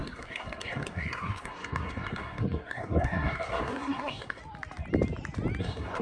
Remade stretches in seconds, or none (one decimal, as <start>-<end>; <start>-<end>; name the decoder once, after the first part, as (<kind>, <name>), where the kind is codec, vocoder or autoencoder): 0.0-4.4 (codec, SNAC); 5.6-6.0